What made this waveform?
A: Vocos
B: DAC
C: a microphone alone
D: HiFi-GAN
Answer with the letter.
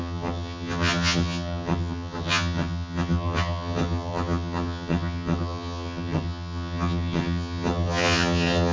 D